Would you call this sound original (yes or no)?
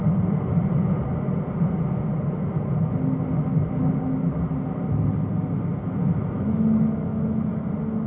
yes